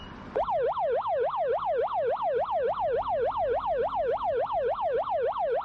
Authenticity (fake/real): real